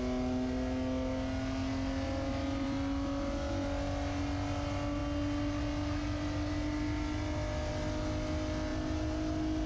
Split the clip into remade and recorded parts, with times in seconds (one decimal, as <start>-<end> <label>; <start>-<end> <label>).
0.0-9.7 recorded